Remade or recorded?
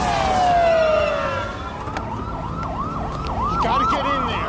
recorded